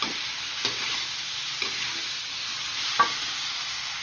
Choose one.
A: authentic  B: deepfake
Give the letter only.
A